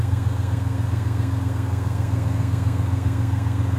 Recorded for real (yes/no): no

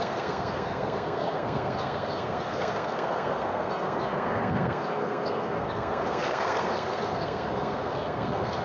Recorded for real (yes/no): no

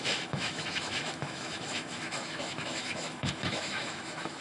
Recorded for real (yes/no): no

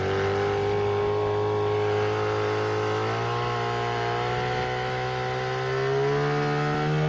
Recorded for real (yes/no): yes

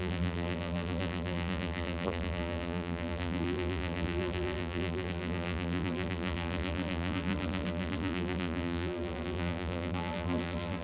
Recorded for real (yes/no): no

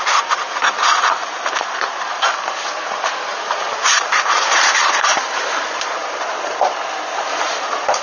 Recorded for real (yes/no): no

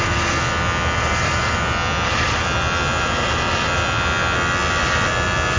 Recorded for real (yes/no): yes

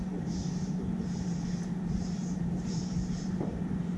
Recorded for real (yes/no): no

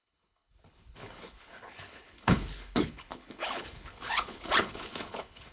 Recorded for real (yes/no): no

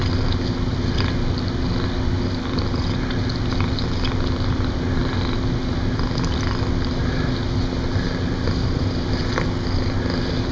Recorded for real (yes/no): yes